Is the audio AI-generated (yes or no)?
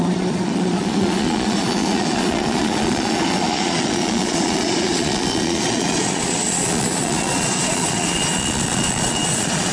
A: yes